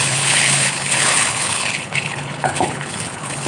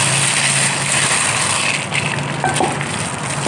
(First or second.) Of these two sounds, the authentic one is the second